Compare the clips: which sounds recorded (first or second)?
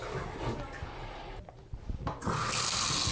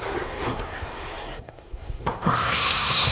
first